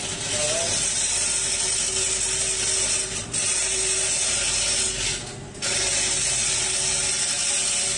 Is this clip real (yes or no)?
yes